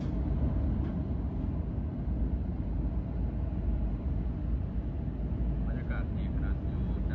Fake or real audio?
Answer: real